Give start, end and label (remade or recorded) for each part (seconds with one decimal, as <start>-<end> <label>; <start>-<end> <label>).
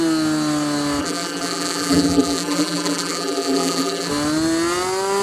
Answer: 0.0-1.0 recorded; 1.0-4.1 remade; 4.1-5.2 recorded